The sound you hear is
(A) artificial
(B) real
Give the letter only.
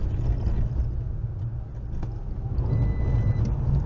B